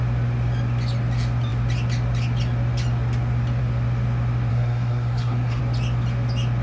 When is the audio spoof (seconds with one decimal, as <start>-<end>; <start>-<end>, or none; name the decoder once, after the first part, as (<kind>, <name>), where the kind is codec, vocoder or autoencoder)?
4.5-5.6 (codec, SNAC)